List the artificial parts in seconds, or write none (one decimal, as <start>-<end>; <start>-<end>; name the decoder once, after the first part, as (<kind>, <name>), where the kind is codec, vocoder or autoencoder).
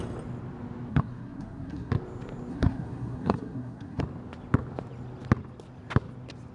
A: 0.9-1.9 (codec, SNAC); 2.5-4.0